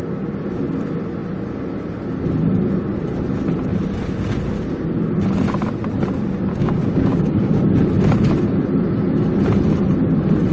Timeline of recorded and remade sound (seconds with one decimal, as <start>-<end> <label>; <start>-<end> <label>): 0.0-6.5 recorded; 6.5-7.6 remade; 7.6-10.5 recorded

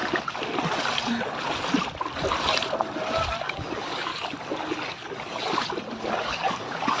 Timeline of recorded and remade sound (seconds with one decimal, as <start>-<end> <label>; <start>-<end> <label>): 0.0-3.4 recorded; 3.4-4.1 remade; 4.1-4.9 recorded; 4.9-5.6 remade; 5.6-6.2 recorded; 6.2-7.0 remade

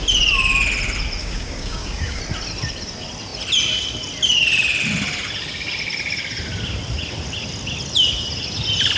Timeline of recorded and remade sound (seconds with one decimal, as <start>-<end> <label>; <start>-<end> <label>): 0.0-1.2 recorded; 1.2-2.2 remade; 2.2-9.0 recorded

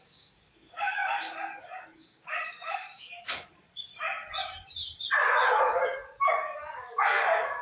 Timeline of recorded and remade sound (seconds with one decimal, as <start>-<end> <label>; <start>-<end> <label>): 0.0-3.9 remade; 3.9-5.6 recorded; 5.6-7.6 remade

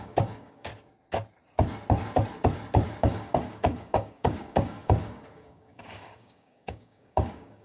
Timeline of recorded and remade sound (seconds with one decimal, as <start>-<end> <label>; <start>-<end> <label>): 0.0-0.7 remade; 0.7-3.0 recorded; 3.0-7.6 remade

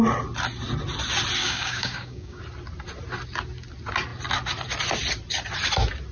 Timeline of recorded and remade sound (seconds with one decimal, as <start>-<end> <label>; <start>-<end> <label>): 0.0-1.4 recorded; 1.4-2.4 remade; 2.4-6.1 recorded

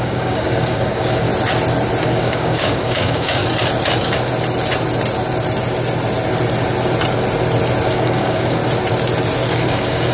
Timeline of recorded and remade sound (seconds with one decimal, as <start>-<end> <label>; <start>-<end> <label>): 0.0-1.3 remade; 1.3-2.0 recorded; 2.0-3.4 remade; 3.4-7.9 recorded; 7.9-8.6 remade; 8.6-9.5 recorded; 9.5-10.1 remade